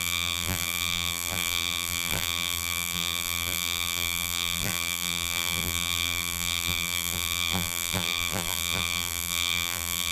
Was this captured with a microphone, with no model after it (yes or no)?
no